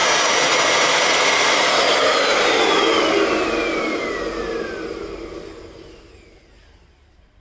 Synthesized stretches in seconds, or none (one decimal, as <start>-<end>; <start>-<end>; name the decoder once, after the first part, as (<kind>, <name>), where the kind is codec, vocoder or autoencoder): none